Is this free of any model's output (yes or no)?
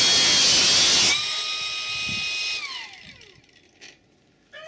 yes